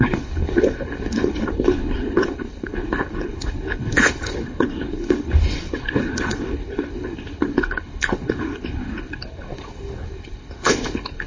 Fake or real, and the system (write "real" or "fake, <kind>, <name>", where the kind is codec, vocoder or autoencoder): fake, codec, HILCodec